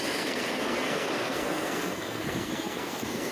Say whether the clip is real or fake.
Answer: fake